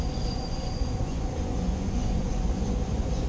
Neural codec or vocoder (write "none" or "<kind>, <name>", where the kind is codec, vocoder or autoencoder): vocoder, Vocos